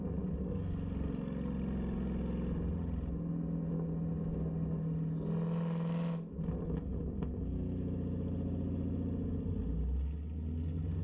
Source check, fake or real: real